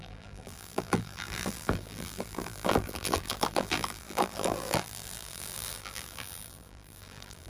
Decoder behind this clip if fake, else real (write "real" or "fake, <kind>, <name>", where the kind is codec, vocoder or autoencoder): fake, vocoder, BigVGAN v2